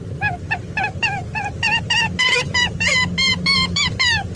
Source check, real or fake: fake